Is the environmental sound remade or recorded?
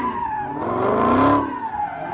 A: recorded